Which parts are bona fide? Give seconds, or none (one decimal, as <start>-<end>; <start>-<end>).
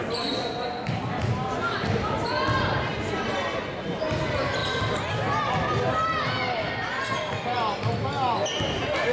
0.0-9.1